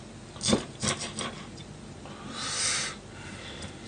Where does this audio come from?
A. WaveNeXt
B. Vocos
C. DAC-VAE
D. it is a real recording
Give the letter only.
D